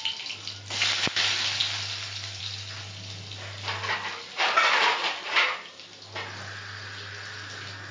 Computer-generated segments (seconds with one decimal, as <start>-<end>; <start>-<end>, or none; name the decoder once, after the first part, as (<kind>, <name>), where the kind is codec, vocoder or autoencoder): none